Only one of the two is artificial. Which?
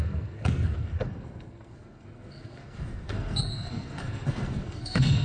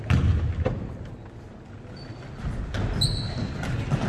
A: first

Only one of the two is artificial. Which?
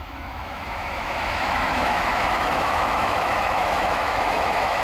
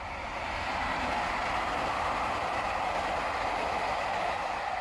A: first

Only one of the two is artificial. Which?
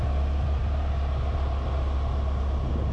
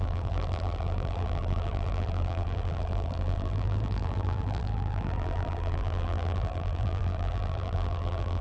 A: second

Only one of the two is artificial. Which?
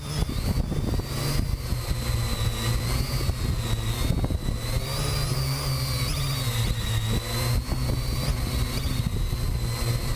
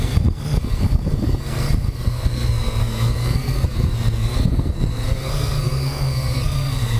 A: second